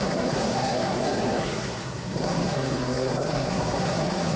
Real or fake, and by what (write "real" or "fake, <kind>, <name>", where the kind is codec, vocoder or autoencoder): fake, codec, SNAC